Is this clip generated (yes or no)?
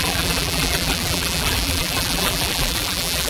yes